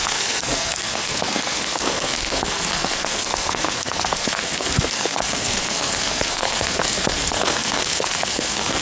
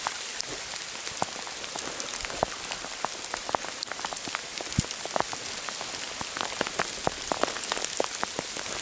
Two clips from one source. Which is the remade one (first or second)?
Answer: first